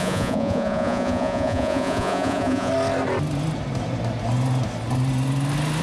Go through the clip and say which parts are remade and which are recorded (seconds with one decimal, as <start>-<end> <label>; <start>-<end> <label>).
0.0-2.7 remade; 2.7-5.8 recorded